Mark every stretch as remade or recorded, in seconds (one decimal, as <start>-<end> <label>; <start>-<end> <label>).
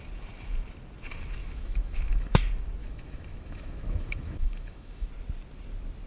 0.0-1.4 recorded; 1.4-2.4 remade; 2.4-2.8 recorded; 2.8-5.1 remade; 5.1-6.1 recorded